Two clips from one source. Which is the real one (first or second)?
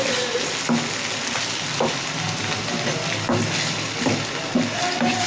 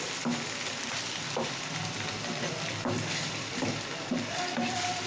first